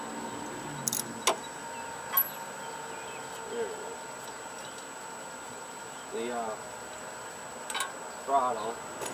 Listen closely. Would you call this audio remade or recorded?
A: recorded